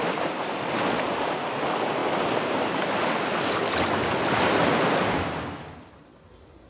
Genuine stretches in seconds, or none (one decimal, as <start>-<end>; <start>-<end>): 0.0-6.7